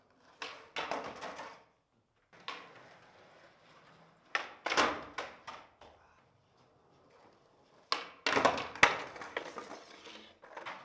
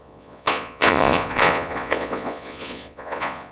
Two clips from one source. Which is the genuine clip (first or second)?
first